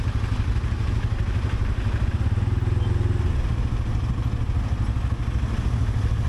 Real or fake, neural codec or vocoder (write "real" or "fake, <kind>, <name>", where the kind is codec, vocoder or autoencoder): real